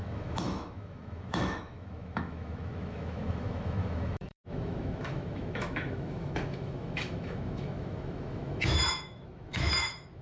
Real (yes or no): no